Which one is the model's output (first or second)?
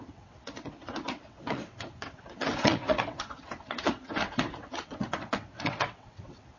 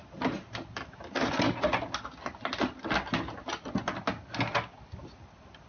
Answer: first